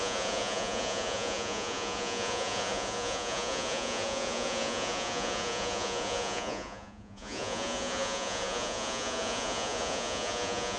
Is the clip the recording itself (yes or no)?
no